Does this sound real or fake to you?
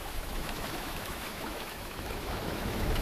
fake